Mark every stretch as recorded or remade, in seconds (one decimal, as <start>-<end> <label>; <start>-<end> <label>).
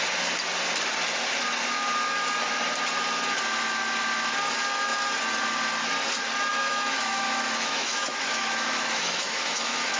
0.0-6.5 recorded; 6.5-10.0 remade